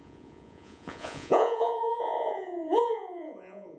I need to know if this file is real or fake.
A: fake